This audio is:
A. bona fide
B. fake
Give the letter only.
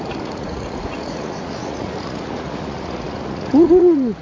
B